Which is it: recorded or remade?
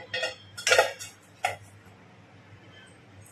recorded